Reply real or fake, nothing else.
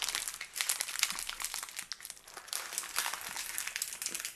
real